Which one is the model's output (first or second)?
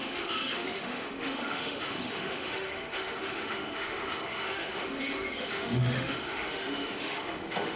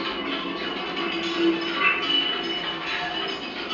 first